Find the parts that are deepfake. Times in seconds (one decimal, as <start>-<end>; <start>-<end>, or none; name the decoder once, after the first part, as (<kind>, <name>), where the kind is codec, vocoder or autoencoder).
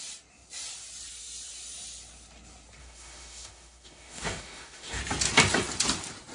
2.8-5.0 (autoencoder, DAC-VAE)